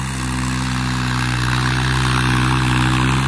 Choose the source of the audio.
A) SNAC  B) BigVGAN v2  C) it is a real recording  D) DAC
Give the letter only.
C